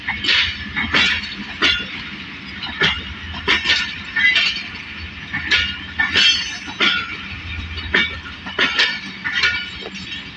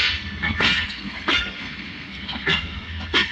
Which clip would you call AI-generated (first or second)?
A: second